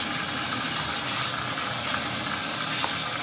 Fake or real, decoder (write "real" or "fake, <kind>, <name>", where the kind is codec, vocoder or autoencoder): real